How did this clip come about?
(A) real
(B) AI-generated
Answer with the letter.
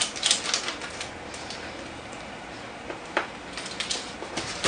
A